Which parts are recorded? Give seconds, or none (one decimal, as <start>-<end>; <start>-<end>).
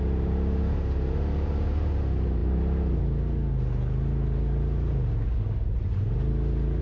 0.0-6.8